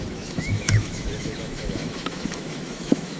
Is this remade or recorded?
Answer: remade